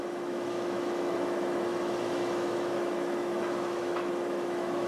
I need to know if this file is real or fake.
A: fake